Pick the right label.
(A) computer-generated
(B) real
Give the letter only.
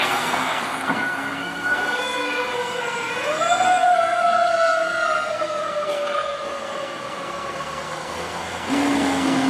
A